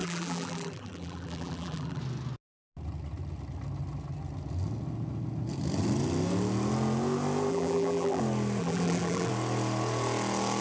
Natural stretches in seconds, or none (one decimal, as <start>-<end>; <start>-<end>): 2.0-7.5; 8.2-8.6; 9.3-10.6